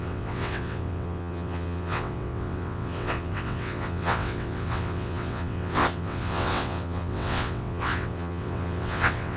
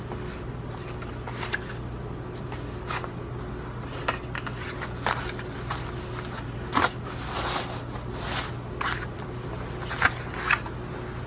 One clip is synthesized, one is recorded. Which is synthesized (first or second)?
first